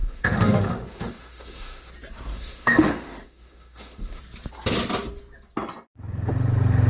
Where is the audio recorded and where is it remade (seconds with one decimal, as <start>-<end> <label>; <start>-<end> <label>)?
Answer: 0.0-1.9 remade; 1.9-2.3 recorded; 2.3-4.2 remade; 4.2-6.9 recorded